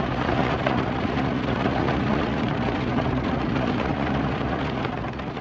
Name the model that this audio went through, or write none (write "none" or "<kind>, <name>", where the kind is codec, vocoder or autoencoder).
vocoder, Vocos